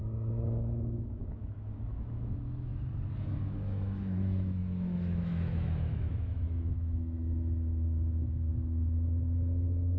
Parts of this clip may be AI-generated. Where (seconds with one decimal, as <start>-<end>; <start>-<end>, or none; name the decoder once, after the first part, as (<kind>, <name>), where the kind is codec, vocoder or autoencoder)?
0.0-2.7 (autoencoder, DAC-VAE); 3.4-10.0